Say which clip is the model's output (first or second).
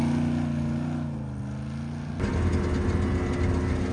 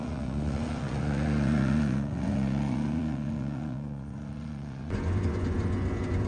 second